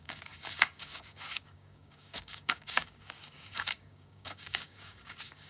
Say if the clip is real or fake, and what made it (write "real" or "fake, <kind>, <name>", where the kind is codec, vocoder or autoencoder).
fake, codec, DAC